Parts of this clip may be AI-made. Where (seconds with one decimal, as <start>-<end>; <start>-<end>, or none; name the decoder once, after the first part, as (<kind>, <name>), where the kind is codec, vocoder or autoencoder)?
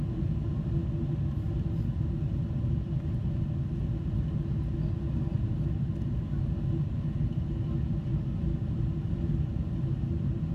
none